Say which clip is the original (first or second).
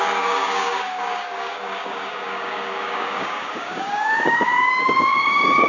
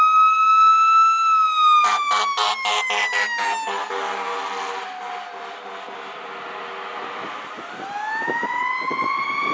second